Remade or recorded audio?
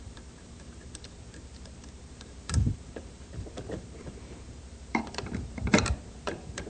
remade